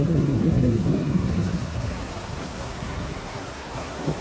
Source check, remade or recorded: remade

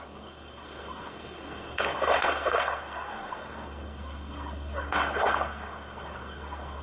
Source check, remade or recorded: remade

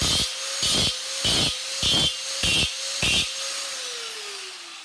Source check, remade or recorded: recorded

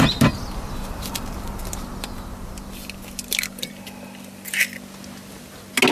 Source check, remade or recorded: recorded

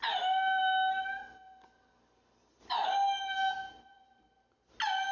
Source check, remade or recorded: recorded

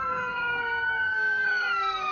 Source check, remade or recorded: remade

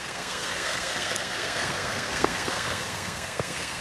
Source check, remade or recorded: remade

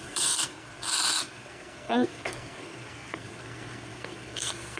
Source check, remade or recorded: remade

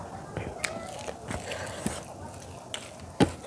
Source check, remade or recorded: recorded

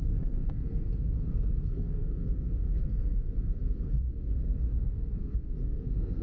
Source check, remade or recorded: remade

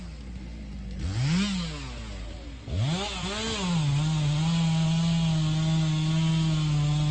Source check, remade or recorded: recorded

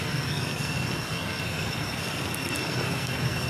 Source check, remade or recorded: remade